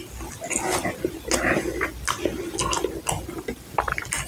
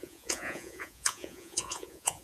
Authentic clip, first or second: first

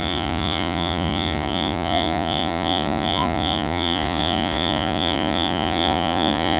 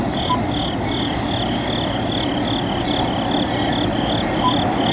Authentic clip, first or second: second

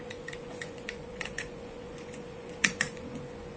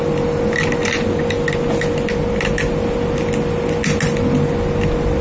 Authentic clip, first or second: second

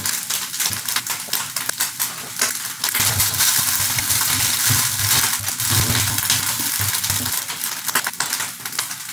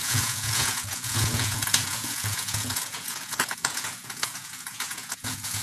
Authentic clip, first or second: first